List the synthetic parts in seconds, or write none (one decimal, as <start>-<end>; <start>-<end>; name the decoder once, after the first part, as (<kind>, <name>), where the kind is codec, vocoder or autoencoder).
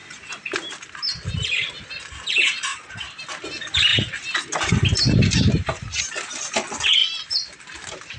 0.0-0.7 (vocoder, BigVGAN v2); 2.7-3.2